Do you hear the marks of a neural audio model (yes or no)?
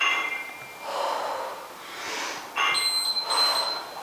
no